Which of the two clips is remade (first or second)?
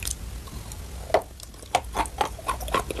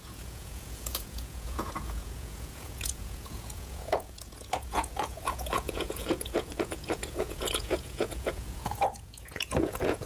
second